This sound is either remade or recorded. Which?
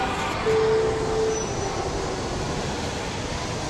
recorded